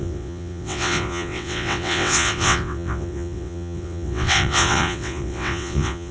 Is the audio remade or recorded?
remade